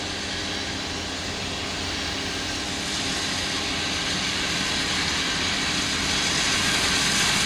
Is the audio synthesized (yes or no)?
no